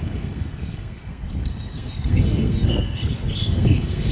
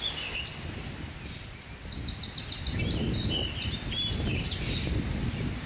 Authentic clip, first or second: second